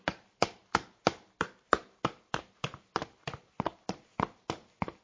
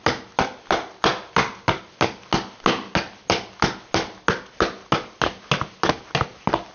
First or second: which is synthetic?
first